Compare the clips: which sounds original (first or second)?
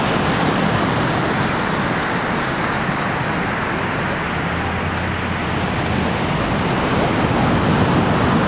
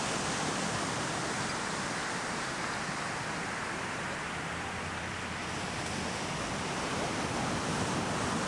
first